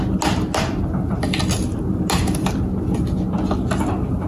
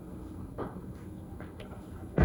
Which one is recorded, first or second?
first